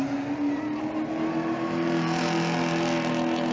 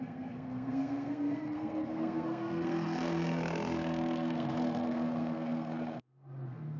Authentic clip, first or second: first